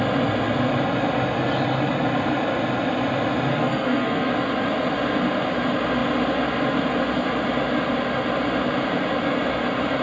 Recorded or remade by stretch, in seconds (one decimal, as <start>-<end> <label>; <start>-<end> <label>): 0.0-3.5 recorded; 3.5-4.3 remade; 4.3-10.0 recorded